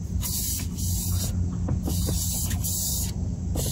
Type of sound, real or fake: real